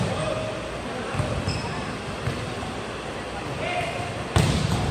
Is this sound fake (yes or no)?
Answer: no